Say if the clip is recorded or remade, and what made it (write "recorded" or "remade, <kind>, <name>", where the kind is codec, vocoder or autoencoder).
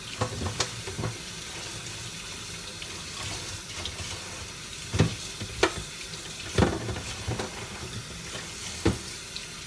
recorded